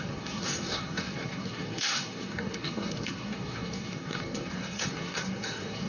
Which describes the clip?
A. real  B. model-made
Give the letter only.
B